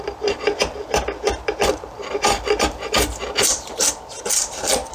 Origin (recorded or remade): remade